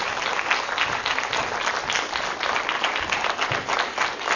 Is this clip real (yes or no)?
yes